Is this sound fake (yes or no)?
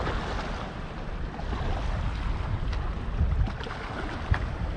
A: no